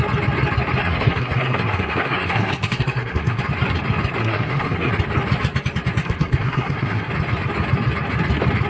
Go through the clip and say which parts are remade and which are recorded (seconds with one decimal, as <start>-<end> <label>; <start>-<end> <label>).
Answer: 0.0-0.8 recorded; 0.8-3.4 remade; 3.4-4.2 recorded; 4.2-4.9 remade; 4.9-6.0 recorded; 6.0-7.1 remade; 7.1-8.7 recorded